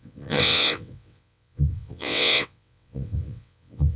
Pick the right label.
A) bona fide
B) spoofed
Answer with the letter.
B